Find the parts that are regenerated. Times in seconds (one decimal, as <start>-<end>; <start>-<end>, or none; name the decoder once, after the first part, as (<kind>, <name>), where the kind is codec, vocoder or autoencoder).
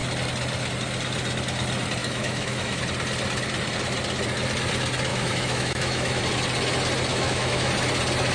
2.0-2.8 (autoencoder, DAC-VAE); 5.1-6.2; 7.1-7.7